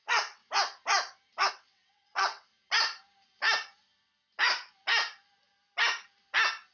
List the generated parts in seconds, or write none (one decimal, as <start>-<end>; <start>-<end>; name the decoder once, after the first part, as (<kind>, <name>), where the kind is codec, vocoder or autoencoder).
0.0-0.4 (vocoder, WaveNeXt); 1.5-2.5